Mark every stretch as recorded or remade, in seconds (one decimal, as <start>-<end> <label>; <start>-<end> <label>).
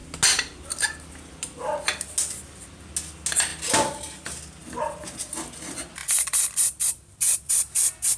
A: 0.0-6.0 recorded; 6.0-7.5 remade; 7.5-8.2 recorded